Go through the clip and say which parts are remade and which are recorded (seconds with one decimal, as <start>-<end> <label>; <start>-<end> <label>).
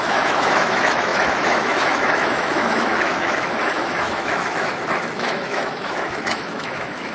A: 0.0-7.1 remade